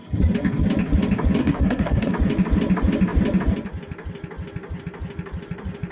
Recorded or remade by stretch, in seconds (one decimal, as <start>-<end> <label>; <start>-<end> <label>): 0.0-1.4 recorded; 1.4-2.1 remade; 2.1-5.9 recorded